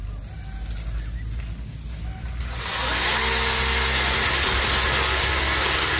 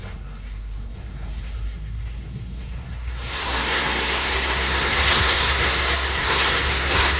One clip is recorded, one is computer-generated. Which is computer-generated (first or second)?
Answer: second